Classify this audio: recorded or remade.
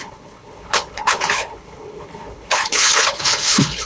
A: remade